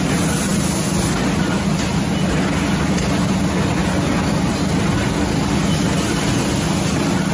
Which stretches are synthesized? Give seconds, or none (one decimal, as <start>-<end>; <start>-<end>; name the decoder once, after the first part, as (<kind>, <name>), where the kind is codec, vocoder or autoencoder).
none